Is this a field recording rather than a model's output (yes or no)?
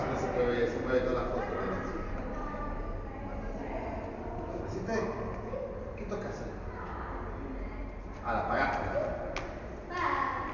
yes